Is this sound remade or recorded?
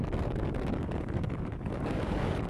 remade